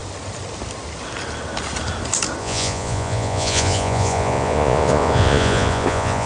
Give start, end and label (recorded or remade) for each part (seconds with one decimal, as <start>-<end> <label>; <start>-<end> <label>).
0.0-2.4 recorded; 2.4-6.3 remade